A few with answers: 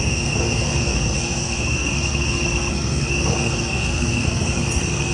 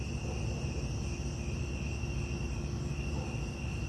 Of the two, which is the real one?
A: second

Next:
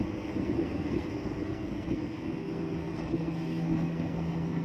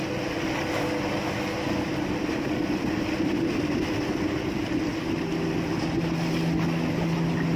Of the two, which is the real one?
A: second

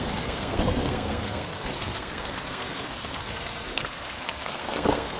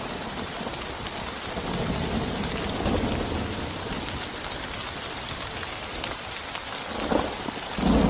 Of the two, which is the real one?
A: second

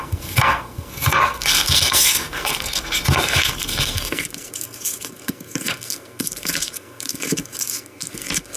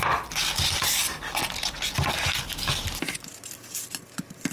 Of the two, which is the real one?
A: second